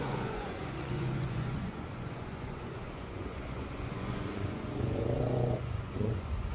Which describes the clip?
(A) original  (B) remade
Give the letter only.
B